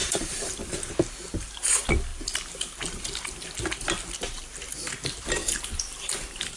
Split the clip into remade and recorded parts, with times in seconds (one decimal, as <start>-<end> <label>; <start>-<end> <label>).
0.0-0.7 remade; 0.7-5.4 recorded; 5.4-6.6 remade